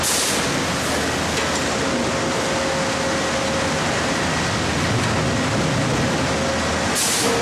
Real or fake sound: real